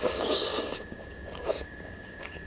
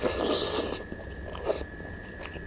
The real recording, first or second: second